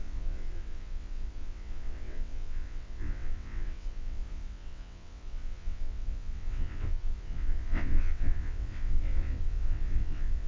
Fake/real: fake